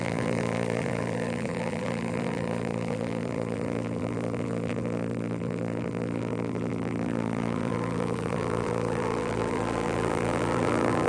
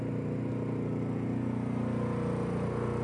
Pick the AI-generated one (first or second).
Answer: first